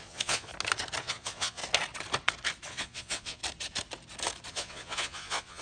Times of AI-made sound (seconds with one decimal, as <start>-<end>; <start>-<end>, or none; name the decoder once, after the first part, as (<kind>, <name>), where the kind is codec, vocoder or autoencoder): 0.0-0.5 (vocoder, Vocos); 1.0-1.6; 2.7-3.4; 4.5-5.6